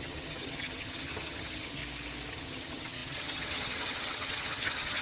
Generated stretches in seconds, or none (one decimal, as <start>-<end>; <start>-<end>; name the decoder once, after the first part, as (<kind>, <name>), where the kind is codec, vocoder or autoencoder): 0.0-1.8 (vocoder, HiFi-GAN); 2.3-5.0